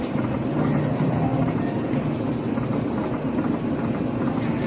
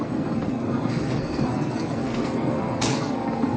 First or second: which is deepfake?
second